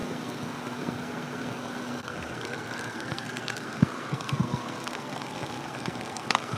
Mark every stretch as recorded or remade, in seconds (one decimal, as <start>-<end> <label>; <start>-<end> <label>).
0.0-6.6 remade